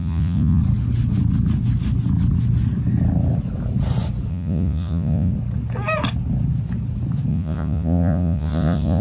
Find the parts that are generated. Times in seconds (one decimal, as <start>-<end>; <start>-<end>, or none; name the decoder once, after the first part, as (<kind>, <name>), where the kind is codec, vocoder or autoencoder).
0.0-0.6 (vocoder, Vocos); 4.3-5.3; 7.3-9.0